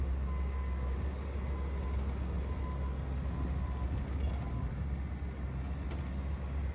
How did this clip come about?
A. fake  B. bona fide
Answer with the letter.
B